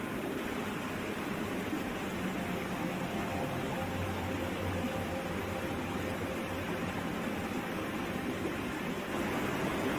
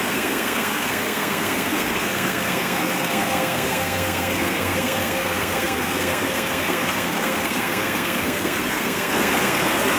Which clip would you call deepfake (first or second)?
second